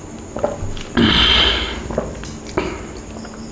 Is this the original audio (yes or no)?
yes